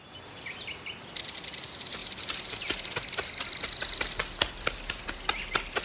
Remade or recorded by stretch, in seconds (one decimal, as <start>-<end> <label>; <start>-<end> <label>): 0.0-5.8 recorded